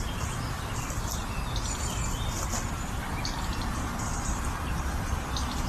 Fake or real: real